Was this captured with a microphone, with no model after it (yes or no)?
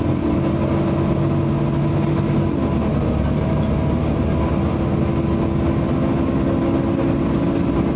yes